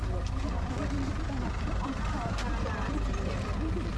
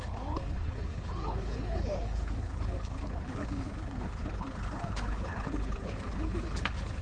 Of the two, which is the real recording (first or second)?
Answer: first